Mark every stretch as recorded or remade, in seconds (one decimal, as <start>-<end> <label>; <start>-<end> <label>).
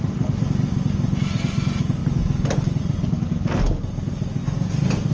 0.0-5.1 recorded